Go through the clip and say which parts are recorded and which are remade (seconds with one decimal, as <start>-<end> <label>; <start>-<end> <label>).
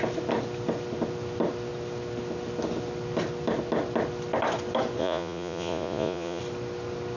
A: 0.0-5.0 recorded; 5.0-6.4 remade; 6.4-7.2 recorded